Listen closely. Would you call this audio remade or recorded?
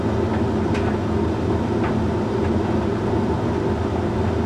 recorded